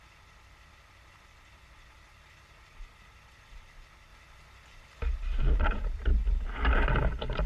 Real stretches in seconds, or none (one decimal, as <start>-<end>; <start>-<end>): 4.1-5.4; 6.1-6.9